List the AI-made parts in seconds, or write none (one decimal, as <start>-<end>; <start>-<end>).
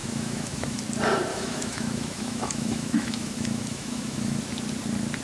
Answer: 0.0-0.8; 1.3-4.4